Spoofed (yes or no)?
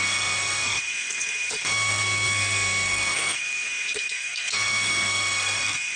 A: yes